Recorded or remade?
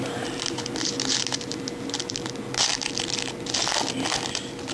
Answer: recorded